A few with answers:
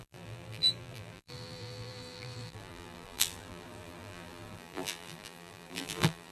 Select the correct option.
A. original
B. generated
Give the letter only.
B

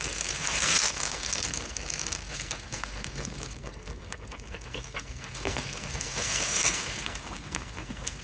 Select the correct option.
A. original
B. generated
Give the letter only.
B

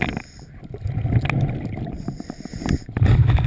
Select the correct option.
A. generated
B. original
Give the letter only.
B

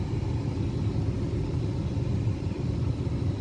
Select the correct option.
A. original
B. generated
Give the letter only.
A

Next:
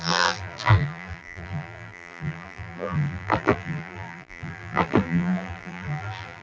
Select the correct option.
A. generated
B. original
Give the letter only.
A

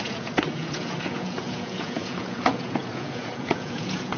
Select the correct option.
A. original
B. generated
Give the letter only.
B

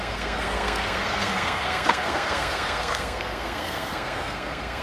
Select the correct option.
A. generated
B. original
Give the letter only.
A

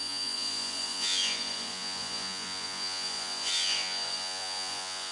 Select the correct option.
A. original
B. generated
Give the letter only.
B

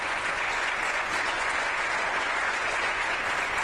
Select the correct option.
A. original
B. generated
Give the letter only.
B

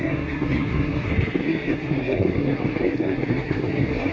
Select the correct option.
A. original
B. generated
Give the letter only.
B